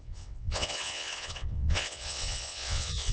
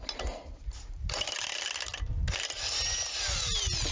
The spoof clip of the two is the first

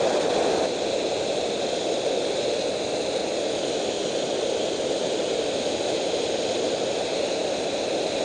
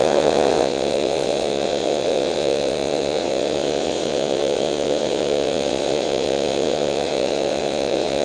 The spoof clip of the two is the second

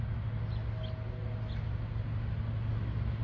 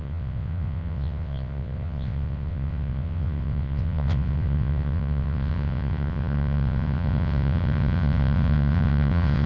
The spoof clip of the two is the second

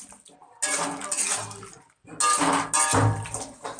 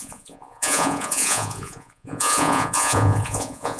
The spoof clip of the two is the second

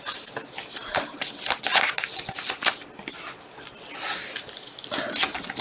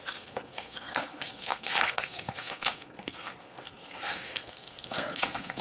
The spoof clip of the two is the second